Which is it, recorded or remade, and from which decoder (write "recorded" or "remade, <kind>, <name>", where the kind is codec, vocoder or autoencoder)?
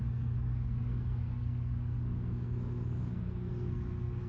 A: remade, codec, SNAC